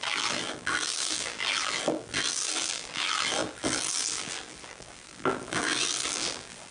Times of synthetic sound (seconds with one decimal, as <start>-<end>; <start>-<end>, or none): 0.0-6.7